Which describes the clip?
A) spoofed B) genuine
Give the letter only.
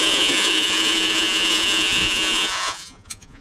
A